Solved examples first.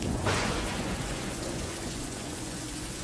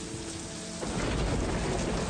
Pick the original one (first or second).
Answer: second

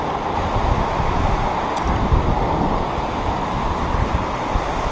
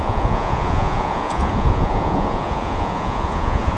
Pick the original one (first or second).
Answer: first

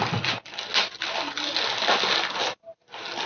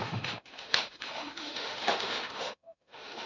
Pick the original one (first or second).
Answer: first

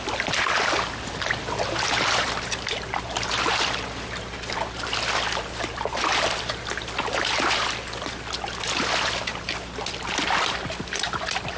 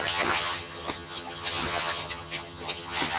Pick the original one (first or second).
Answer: first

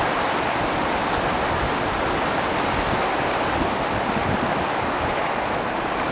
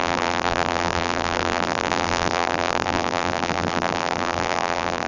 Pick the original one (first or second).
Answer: first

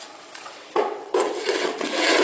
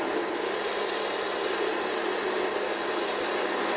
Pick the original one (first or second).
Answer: second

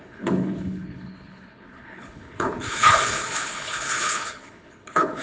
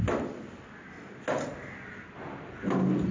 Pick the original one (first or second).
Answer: second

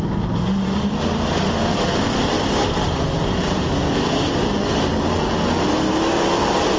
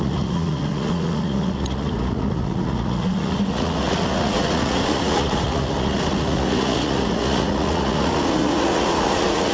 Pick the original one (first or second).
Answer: first